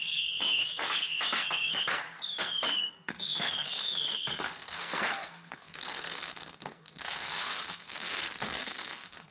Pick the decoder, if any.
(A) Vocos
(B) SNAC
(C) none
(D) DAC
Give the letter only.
B